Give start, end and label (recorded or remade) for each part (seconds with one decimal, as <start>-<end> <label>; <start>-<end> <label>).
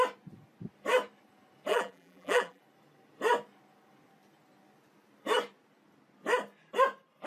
0.0-1.7 recorded; 1.7-2.6 remade; 2.6-7.3 recorded